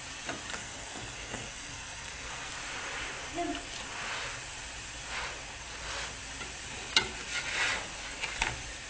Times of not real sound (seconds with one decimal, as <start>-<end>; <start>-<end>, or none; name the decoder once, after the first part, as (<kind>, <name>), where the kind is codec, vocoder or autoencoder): 0.5-2.5 (codec, SNAC)